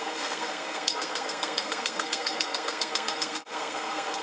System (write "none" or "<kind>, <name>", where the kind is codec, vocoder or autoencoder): codec, SNAC